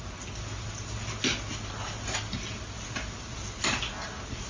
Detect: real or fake real